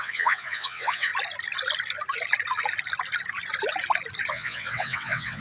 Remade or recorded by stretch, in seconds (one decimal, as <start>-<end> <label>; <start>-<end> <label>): 0.0-1.1 remade; 1.1-4.3 recorded; 4.3-5.4 remade